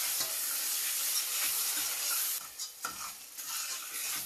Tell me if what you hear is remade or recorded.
recorded